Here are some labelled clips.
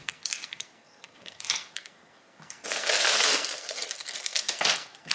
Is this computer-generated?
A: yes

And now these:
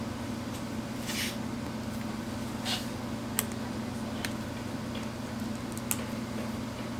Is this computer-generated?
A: no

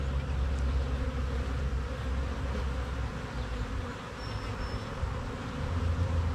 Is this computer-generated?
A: no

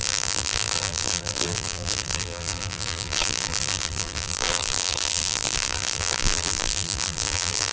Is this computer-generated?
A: yes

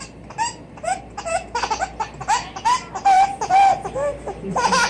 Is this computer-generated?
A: no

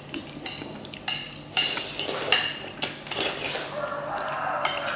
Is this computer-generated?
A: no